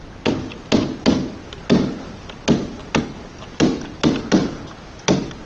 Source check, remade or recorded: recorded